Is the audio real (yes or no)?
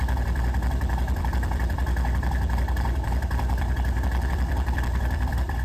no